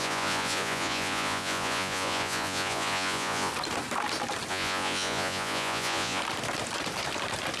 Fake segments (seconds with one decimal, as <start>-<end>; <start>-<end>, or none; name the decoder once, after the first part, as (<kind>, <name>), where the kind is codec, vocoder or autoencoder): 0.0-3.5 (vocoder, Vocos); 4.5-6.2